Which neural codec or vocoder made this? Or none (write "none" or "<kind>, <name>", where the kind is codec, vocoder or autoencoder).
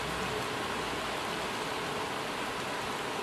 none